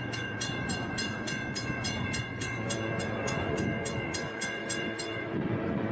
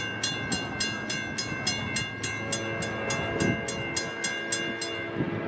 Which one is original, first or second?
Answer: second